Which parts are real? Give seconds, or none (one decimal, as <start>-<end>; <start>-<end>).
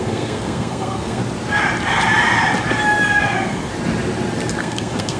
1.2-3.1; 3.7-4.6